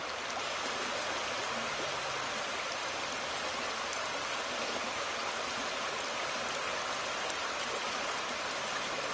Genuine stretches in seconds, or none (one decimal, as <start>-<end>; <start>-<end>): 0.0-9.1